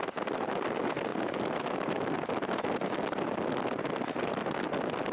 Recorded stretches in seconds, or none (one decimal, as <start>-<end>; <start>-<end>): 0.0-5.1